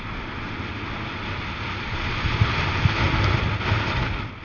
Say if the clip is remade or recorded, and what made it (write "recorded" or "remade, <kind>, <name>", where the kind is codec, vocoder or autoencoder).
recorded